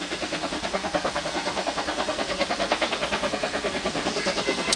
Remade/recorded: remade